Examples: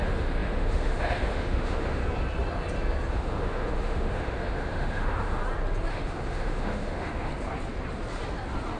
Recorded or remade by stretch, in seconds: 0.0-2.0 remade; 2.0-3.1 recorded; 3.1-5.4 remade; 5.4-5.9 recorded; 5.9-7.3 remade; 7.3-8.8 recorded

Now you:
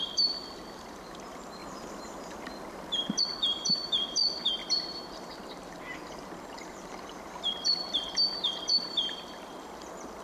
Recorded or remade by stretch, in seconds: 0.0-1.6 remade; 1.6-3.2 recorded; 3.2-10.2 remade

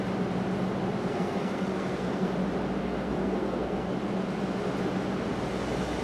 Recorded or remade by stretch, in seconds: 0.0-1.1 recorded; 1.1-2.3 remade; 2.3-2.8 recorded; 2.8-3.9 remade; 3.9-6.0 recorded

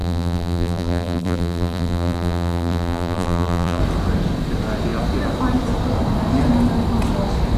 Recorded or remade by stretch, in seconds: 0.0-3.8 remade; 3.8-7.6 recorded

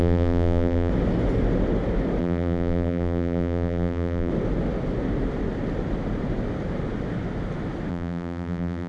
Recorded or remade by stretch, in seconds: 0.0-0.9 remade; 0.9-2.2 recorded; 2.2-4.3 remade; 4.3-7.9 recorded; 7.9-8.9 remade